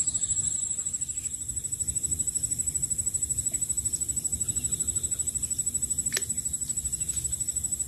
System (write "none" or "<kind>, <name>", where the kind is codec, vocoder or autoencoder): none